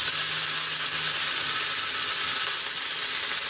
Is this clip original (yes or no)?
yes